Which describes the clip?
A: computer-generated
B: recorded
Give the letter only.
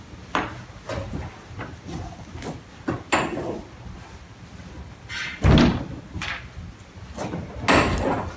B